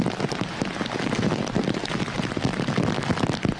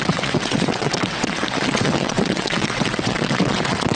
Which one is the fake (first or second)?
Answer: second